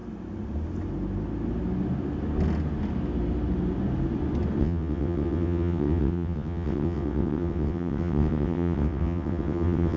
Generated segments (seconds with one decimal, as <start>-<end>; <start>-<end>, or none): 4.6-10.0